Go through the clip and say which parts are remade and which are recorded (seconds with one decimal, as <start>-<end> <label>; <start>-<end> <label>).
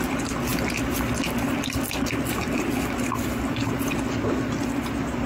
0.0-5.3 recorded